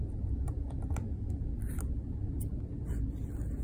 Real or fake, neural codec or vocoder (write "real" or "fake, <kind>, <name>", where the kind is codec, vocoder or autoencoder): real